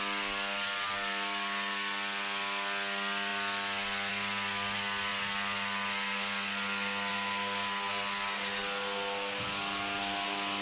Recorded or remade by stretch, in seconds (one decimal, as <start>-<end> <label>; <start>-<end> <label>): 0.0-10.6 recorded